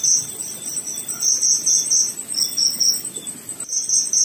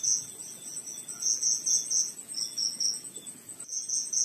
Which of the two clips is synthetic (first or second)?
second